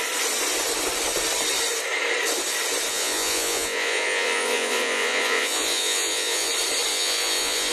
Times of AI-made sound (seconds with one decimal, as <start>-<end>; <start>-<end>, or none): 2.9-6.5; 6.9-7.7